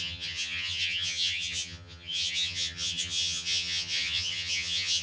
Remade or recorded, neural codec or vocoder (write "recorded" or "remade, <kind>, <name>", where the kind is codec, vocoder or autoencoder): remade, vocoder, HiFi-GAN